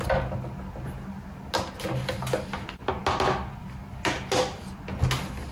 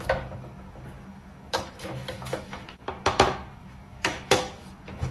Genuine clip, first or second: first